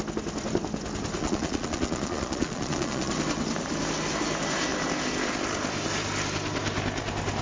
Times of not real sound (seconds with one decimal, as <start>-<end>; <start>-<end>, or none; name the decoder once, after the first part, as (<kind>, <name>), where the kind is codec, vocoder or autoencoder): 1.2-3.1 (vocoder, Vocos)